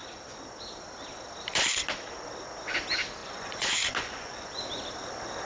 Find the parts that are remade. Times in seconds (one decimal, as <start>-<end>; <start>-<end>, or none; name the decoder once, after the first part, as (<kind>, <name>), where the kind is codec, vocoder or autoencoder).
3.2-4.5 (vocoder, Vocos)